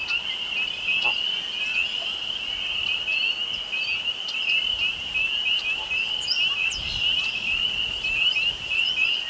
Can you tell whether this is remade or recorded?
recorded